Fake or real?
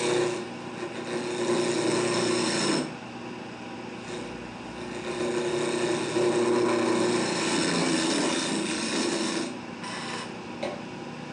real